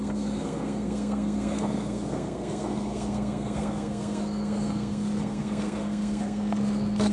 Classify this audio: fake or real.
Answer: fake